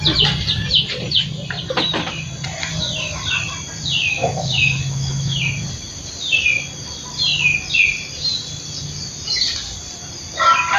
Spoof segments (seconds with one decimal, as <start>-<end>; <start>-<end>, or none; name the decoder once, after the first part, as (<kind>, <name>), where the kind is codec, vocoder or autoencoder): 4.2-5.4 (autoencoder, DAC-VAE)